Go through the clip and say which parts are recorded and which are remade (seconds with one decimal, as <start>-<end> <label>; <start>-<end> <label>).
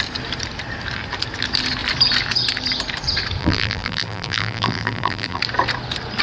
0.0-3.4 recorded; 3.4-5.4 remade; 5.4-6.2 recorded